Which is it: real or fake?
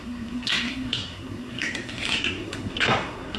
fake